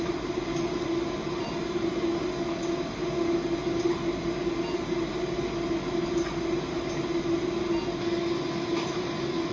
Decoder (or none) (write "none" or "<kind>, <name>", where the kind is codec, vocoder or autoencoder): none